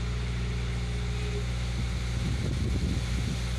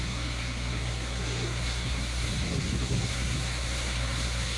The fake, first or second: second